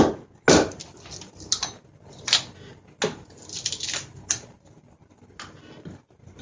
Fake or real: real